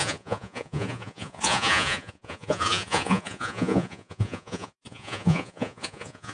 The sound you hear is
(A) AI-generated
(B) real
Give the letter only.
A